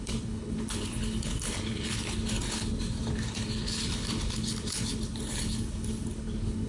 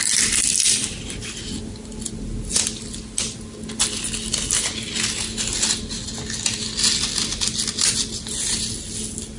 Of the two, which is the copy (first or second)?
first